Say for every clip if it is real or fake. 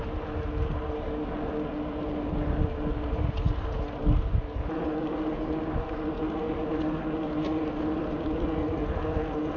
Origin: real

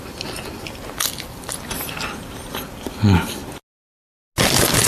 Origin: real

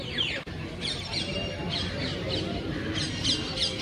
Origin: real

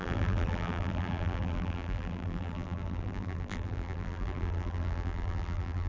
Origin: fake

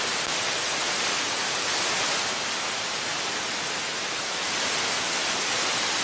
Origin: real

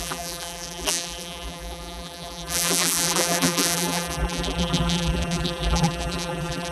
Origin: fake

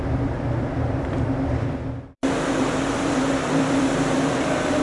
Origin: fake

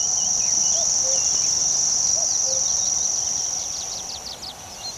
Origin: real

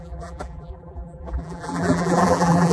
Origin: fake